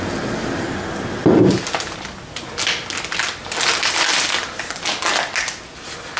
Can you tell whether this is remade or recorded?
recorded